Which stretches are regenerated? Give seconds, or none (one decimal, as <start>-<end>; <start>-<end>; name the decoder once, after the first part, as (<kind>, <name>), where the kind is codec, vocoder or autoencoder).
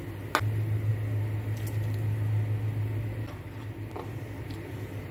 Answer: none